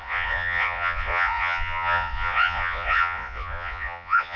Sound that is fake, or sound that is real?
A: fake